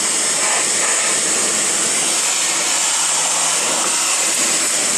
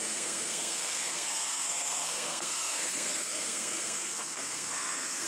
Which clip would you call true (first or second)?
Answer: first